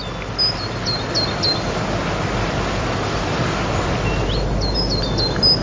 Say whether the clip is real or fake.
real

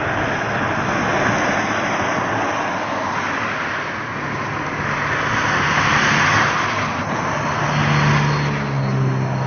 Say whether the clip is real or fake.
real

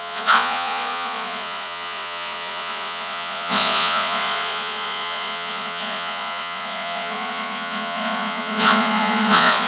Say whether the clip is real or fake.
fake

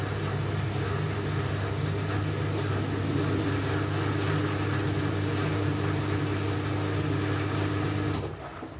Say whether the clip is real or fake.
real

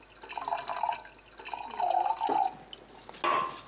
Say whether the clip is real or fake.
real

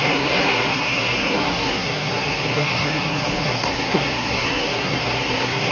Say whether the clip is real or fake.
fake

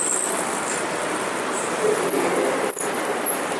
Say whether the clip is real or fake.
real